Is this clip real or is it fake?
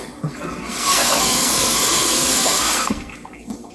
fake